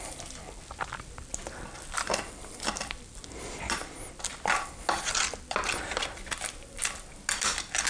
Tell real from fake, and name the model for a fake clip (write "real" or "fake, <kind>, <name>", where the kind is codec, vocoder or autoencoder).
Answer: real